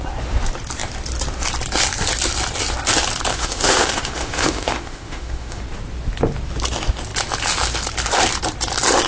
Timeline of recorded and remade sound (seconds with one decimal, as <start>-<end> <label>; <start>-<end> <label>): 0.0-3.3 recorded; 3.3-5.6 remade; 5.6-9.1 recorded